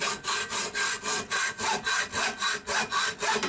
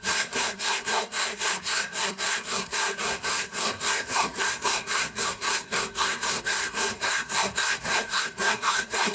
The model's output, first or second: second